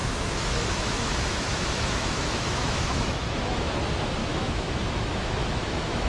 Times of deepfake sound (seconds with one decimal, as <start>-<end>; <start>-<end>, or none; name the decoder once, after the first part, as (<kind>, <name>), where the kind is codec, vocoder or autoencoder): 0.0-3.7 (autoencoder, DAC-VAE); 4.2-6.1